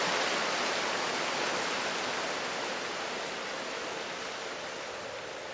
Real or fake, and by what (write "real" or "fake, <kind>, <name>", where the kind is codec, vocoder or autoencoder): real